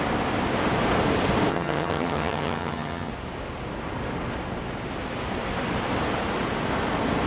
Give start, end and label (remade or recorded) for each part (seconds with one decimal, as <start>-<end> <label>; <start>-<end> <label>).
0.0-1.5 recorded; 1.5-3.1 remade; 3.1-7.3 recorded